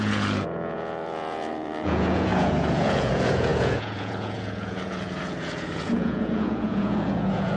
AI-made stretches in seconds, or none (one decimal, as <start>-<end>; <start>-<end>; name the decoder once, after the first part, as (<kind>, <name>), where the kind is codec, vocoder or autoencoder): 0.0-7.6 (vocoder, Vocos)